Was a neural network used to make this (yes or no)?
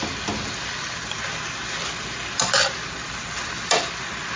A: no